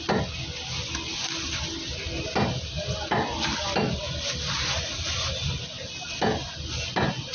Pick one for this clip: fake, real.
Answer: real